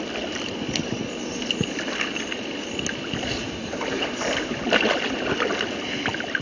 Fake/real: real